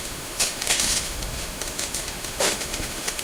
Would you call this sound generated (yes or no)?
yes